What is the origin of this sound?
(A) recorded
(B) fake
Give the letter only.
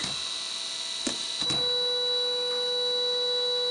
A